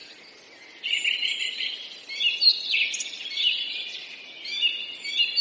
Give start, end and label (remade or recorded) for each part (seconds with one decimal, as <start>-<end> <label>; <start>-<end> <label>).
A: 0.0-5.4 recorded